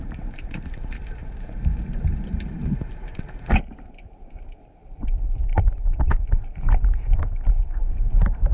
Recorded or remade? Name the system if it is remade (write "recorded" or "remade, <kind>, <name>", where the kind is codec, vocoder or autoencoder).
remade, vocoder, BigVGAN v2